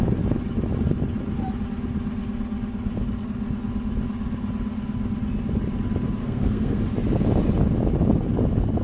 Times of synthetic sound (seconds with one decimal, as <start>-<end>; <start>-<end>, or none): 6.2-6.8